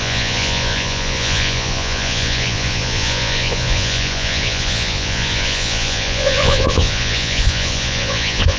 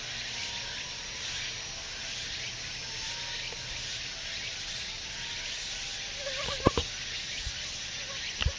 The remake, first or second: first